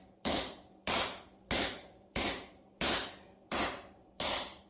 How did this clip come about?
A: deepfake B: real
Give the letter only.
A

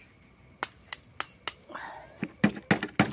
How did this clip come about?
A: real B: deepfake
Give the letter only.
A